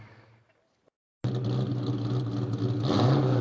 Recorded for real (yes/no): yes